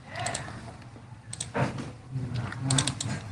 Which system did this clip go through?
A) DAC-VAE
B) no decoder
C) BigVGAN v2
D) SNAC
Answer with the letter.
B